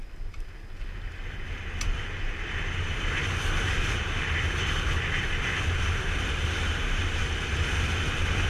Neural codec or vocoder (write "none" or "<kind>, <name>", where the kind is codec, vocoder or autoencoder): none